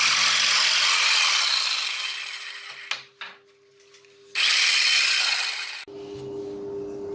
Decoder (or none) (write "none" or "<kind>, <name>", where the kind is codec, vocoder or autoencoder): none